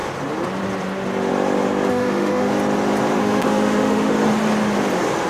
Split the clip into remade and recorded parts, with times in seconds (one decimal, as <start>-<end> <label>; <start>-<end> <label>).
0.0-1.9 recorded; 1.9-2.5 remade; 2.5-3.2 recorded; 3.2-4.1 remade; 4.1-5.3 recorded